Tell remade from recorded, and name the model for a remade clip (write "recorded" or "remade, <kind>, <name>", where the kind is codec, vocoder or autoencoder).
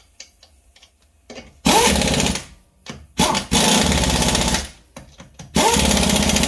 recorded